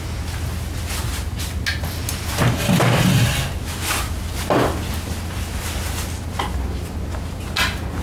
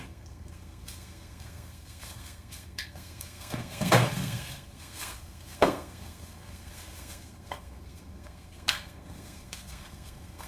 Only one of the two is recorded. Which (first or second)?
first